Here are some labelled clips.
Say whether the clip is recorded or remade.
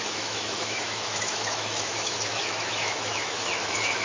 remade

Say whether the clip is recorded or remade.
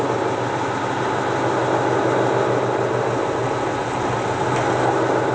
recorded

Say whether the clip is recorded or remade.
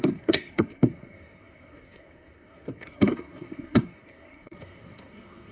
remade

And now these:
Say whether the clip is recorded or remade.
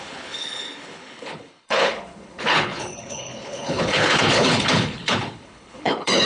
remade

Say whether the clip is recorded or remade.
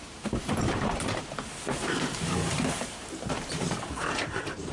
remade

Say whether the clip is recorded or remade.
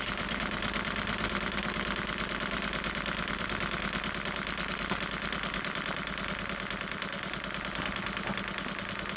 recorded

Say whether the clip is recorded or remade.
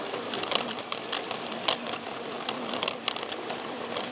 recorded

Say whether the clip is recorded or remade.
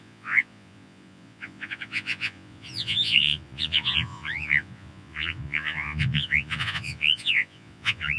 remade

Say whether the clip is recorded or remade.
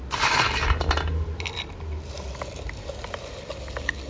recorded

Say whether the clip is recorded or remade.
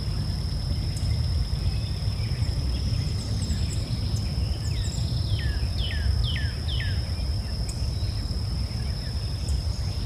recorded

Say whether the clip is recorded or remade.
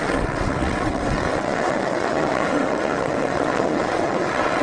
remade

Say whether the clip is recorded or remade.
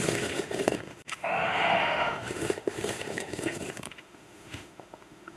remade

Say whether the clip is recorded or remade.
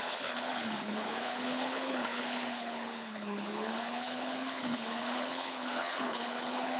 remade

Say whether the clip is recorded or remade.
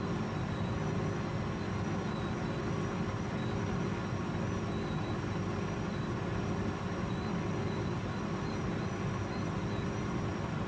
recorded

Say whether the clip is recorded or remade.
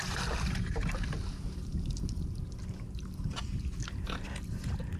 remade